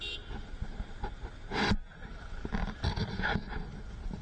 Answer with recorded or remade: recorded